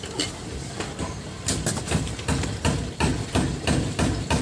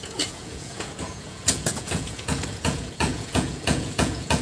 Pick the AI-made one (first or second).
second